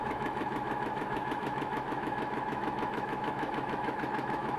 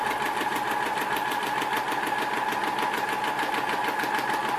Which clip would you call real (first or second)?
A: second